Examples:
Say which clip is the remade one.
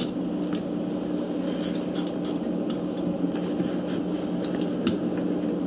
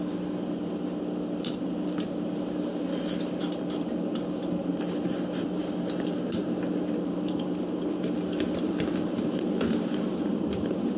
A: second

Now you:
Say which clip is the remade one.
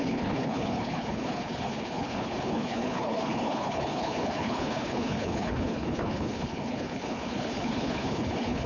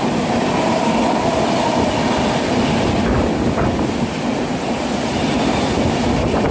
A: first